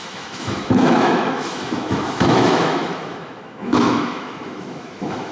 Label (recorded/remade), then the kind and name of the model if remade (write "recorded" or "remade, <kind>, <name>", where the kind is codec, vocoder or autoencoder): remade, autoencoder, DAC-VAE